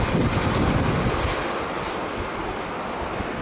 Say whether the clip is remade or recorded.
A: recorded